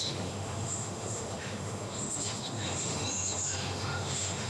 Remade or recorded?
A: remade